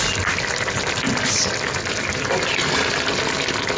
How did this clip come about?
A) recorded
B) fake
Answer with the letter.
A